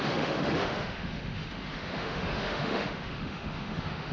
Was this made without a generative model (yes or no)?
no